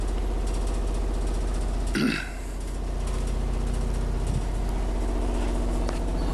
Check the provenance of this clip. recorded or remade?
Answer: recorded